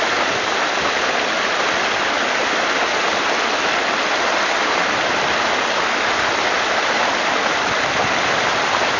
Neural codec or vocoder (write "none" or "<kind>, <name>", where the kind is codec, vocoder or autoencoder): none